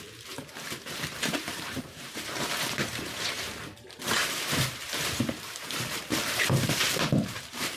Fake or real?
fake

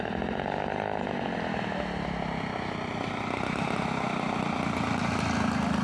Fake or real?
real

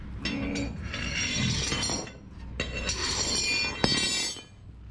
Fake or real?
real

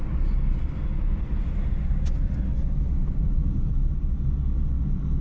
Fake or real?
real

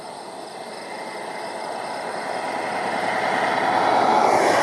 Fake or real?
real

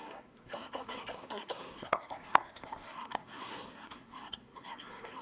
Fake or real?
fake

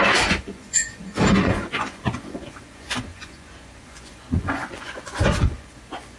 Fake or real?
fake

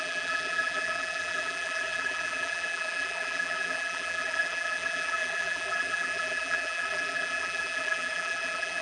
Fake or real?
fake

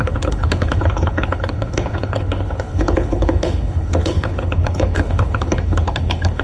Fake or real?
fake